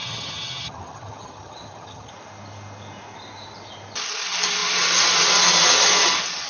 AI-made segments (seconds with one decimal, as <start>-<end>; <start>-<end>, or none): 0.0-2.1